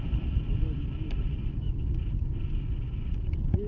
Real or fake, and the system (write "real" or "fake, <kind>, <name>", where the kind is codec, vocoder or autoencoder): real